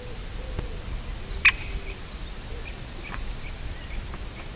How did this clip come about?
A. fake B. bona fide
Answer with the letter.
B